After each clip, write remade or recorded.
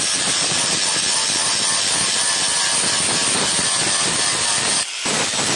recorded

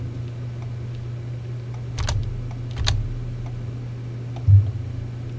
recorded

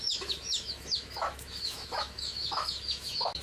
remade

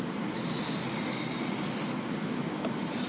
recorded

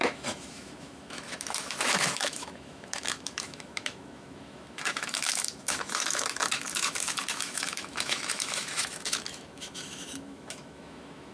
remade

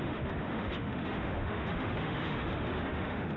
remade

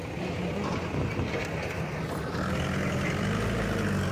recorded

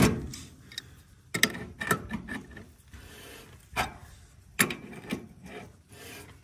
recorded